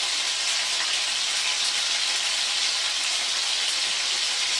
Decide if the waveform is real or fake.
real